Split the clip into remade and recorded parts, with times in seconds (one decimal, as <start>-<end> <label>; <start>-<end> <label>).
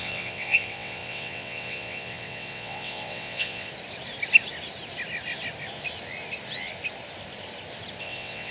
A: 0.0-3.7 remade; 3.7-8.0 recorded; 8.0-8.5 remade